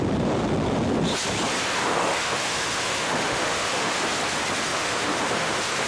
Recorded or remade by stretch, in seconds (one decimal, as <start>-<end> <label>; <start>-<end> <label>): 0.0-1.7 recorded; 1.7-4.0 remade; 4.0-4.7 recorded; 4.7-5.9 remade